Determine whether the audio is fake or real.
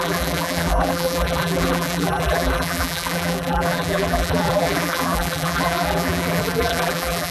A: fake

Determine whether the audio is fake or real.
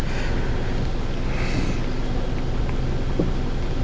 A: real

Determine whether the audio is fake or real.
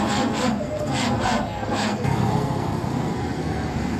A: fake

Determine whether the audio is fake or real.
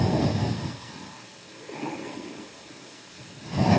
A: fake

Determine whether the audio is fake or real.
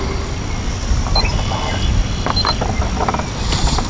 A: real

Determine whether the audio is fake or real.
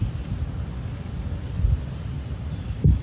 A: real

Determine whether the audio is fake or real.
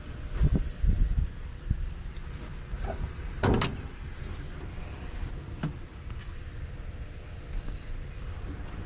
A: real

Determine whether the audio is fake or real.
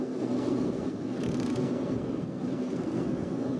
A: fake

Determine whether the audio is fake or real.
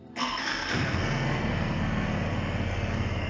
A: fake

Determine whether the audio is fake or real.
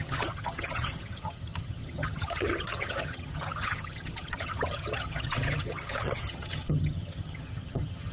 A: fake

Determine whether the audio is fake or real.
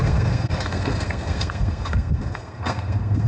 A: fake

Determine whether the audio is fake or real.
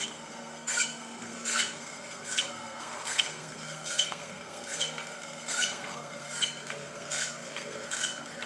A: fake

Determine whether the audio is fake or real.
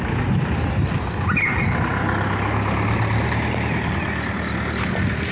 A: real